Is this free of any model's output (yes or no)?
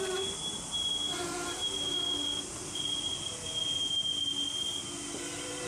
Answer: yes